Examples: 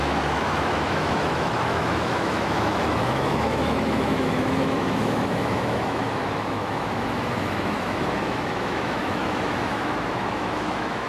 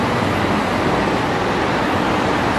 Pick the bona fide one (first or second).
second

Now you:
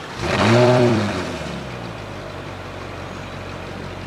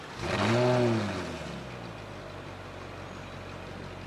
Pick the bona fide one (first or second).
second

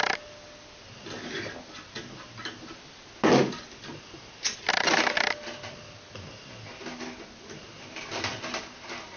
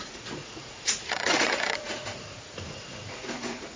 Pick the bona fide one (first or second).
first